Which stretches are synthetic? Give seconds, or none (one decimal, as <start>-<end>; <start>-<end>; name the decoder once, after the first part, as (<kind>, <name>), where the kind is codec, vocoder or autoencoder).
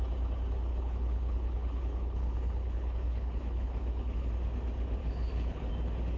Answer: 0.7-4.3 (codec, HILCodec); 5.0-5.7